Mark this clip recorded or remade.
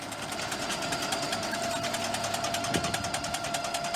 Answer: recorded